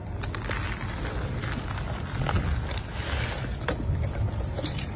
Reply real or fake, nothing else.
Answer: real